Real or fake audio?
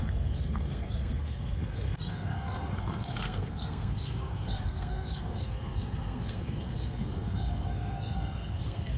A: fake